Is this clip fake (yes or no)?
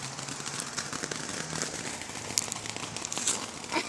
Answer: no